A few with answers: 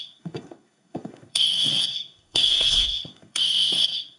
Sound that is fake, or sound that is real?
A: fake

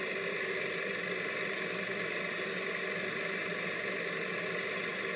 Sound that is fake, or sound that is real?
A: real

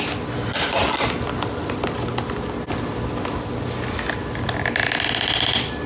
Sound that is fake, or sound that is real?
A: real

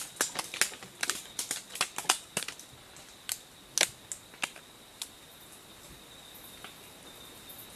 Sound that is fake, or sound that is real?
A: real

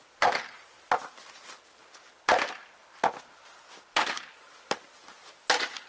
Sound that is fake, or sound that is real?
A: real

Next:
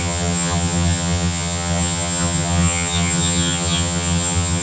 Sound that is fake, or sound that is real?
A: fake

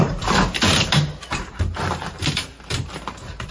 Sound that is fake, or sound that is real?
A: fake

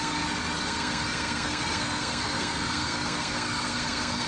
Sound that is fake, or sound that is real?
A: fake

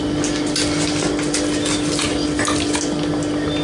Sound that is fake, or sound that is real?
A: real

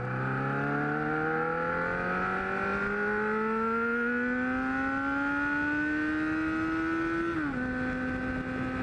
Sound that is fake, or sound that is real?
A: real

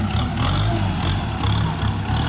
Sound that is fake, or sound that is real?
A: real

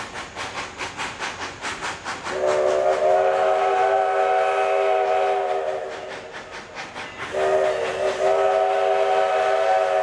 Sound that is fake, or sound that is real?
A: real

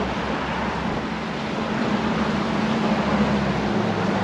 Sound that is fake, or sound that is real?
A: real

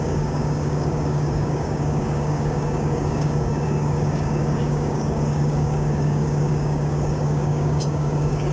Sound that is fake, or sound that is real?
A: fake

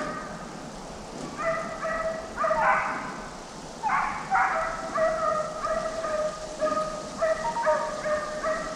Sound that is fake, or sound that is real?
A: real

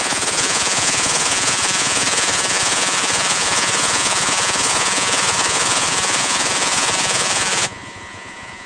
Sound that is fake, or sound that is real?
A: fake